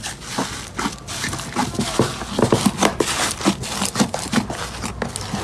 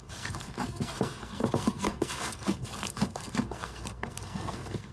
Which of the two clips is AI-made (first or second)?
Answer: second